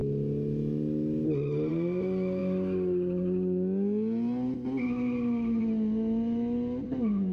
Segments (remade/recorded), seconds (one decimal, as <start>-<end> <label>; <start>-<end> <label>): 0.0-7.3 recorded